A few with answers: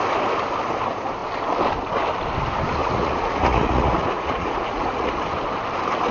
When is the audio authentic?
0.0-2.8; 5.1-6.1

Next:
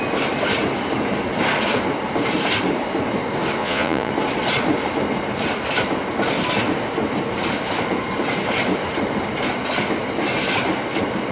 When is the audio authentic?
0.0-3.6; 4.1-11.3